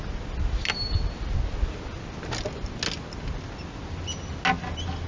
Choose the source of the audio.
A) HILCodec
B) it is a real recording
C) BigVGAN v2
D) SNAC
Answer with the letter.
B